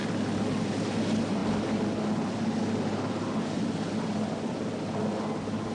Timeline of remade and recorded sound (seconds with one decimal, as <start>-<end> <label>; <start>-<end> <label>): 0.0-5.7 recorded